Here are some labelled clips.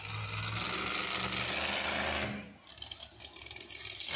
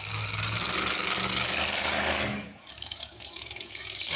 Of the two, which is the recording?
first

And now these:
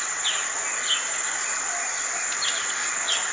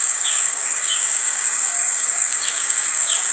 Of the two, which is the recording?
first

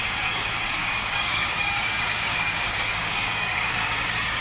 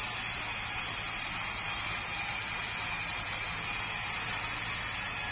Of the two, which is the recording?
second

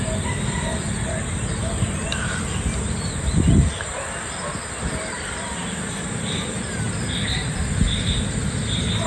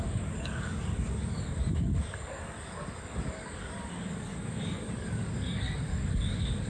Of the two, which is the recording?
first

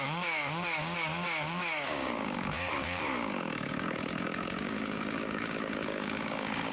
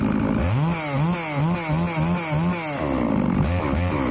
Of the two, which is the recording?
second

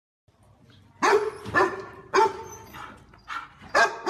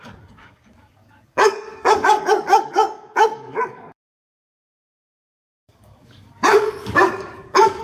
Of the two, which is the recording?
first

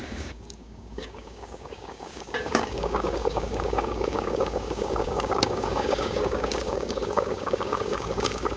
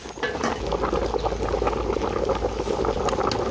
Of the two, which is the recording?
second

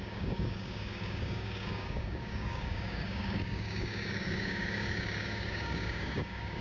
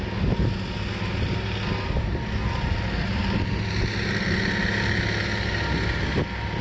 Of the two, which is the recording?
second